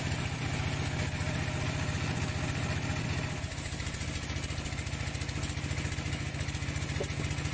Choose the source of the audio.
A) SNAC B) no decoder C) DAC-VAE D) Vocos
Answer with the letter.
B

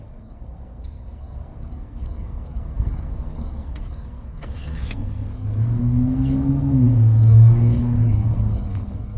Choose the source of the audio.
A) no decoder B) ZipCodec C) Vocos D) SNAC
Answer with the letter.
D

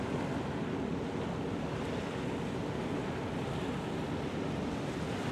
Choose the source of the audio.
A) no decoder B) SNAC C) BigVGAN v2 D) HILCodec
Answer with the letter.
A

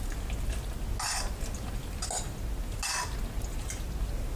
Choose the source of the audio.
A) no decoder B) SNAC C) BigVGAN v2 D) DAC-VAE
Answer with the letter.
A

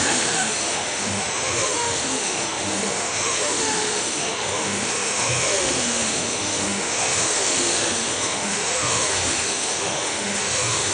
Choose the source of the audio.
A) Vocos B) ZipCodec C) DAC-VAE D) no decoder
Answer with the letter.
C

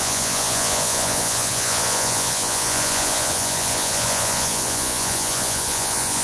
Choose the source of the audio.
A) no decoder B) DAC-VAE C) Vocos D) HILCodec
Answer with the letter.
C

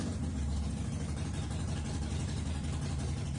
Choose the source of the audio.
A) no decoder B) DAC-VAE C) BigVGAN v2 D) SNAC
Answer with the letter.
C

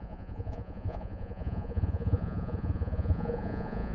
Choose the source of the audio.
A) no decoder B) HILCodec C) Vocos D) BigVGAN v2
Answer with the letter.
C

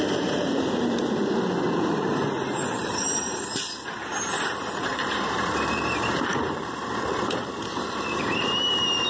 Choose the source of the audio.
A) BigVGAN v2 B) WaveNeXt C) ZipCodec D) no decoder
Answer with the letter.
A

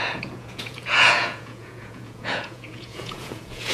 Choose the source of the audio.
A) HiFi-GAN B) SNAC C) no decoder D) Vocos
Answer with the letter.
D